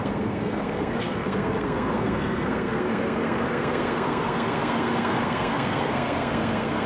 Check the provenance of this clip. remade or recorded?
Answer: remade